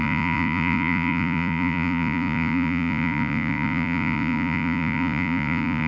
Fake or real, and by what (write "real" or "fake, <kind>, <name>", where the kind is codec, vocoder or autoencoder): fake, vocoder, Vocos